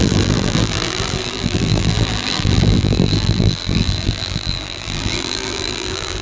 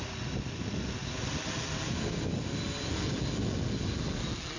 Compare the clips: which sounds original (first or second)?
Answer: second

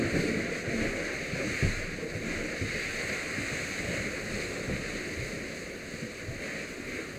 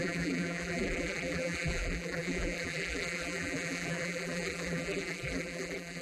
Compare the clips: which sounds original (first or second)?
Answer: first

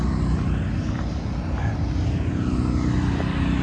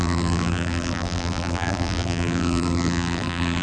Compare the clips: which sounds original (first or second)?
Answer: first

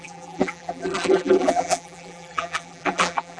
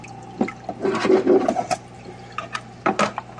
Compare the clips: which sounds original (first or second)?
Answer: second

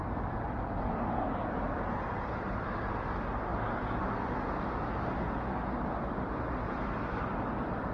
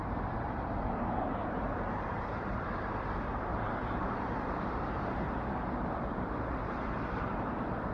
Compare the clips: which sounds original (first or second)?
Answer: first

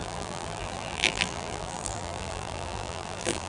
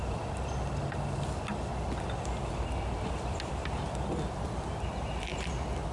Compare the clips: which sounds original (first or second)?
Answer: second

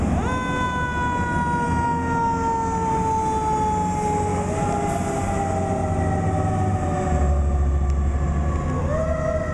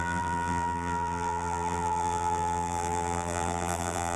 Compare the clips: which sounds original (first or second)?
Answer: first